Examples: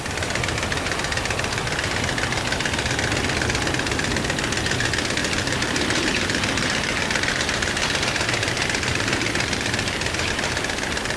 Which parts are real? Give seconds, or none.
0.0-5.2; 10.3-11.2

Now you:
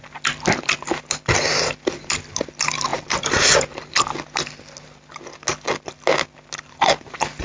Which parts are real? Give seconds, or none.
0.0-7.4

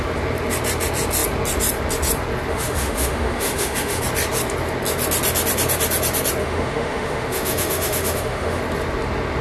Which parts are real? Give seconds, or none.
0.0-2.5; 4.0-6.4; 8.6-9.4

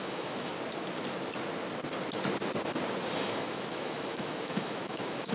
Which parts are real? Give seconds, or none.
0.5-3.2

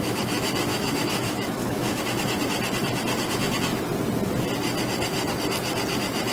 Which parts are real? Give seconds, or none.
0.0-0.7; 2.0-6.3

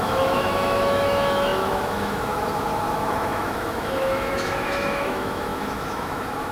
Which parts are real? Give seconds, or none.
none